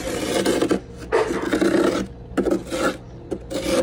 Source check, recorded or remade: recorded